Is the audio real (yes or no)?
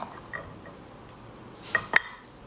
yes